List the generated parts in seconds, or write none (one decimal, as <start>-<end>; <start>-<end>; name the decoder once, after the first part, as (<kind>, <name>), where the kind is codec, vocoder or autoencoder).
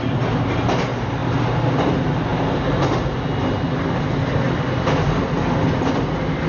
none